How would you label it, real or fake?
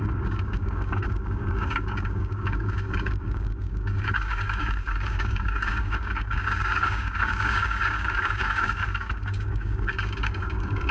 fake